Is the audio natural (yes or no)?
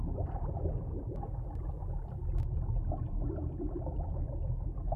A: no